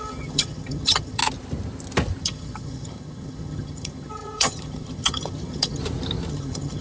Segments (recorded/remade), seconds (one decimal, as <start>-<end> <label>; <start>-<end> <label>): 0.0-1.2 remade; 1.2-2.2 recorded; 2.2-5.8 remade; 5.8-6.3 recorded; 6.3-6.8 remade